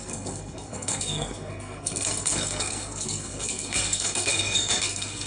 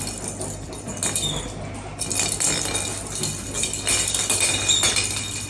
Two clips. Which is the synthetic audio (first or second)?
first